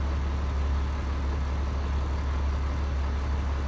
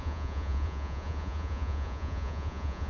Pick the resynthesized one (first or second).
second